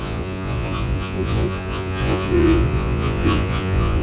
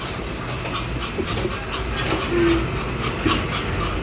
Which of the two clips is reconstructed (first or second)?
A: first